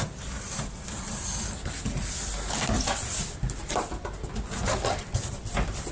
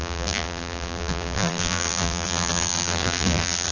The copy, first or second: second